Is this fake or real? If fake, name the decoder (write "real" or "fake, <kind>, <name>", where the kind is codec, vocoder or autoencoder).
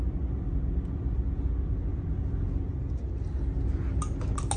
real